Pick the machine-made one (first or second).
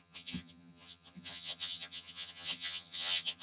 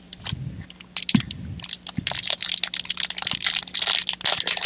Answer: first